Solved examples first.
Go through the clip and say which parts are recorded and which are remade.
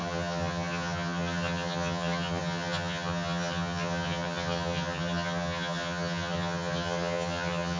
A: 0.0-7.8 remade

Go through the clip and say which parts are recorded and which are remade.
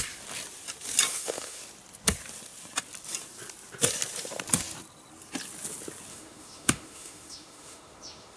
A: 0.0-1.1 recorded; 1.1-1.6 remade; 1.6-6.1 recorded; 6.1-8.4 remade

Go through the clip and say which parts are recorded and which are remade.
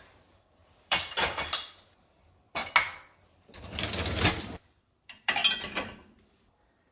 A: 0.0-2.6 remade; 2.6-4.4 recorded; 4.4-5.4 remade; 5.4-6.3 recorded; 6.3-6.9 remade